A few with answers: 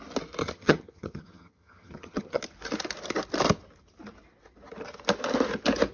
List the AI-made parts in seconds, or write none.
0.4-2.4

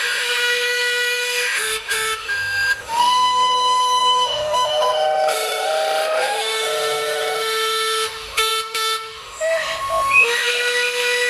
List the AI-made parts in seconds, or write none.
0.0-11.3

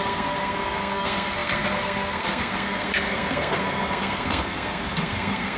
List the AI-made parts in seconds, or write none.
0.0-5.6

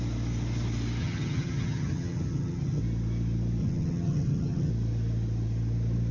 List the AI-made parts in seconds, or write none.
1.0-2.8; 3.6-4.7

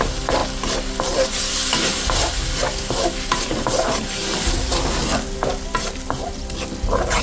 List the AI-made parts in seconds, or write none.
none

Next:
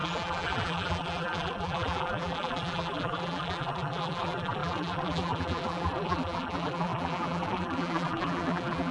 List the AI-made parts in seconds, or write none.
0.0-8.9

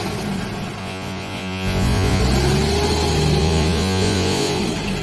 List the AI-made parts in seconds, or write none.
0.8-2.2; 3.4-4.6

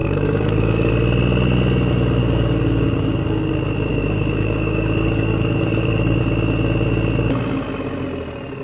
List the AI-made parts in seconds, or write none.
0.0-0.9; 2.2-3.5; 3.9-6.2